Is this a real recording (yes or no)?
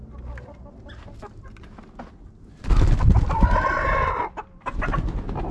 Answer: yes